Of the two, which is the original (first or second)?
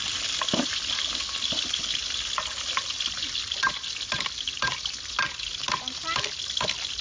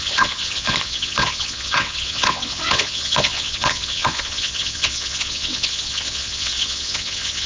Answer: first